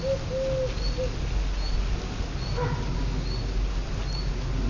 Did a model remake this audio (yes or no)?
no